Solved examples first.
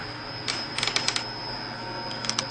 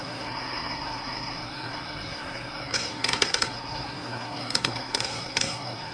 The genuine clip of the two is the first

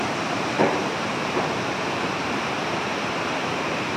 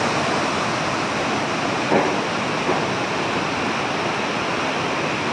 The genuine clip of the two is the second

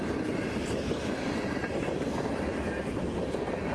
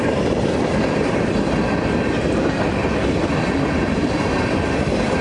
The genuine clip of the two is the first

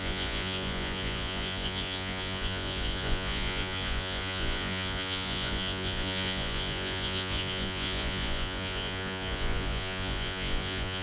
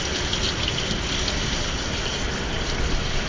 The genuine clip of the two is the second